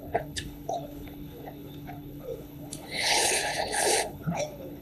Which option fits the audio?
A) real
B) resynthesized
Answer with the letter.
B